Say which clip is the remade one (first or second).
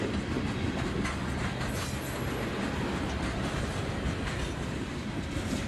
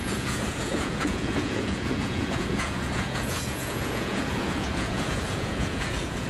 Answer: second